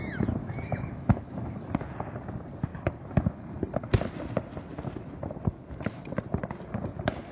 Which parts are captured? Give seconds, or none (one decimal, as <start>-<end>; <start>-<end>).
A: 0.0-0.4; 1.7-7.3